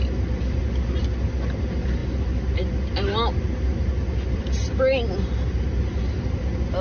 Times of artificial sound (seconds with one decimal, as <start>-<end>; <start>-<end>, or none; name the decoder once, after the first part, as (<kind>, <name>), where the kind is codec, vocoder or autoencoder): none